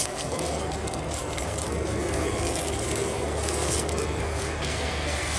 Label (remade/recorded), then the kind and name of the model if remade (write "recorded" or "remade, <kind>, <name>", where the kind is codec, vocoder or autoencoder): remade, codec, SNAC